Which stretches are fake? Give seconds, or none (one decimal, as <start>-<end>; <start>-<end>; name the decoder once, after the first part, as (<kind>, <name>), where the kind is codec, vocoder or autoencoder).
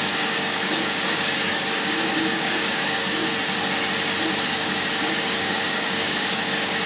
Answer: 0.0-3.2 (codec, DAC); 4.4-6.9